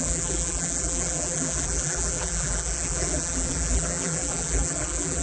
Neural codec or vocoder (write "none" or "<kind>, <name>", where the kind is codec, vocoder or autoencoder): vocoder, BigVGAN v2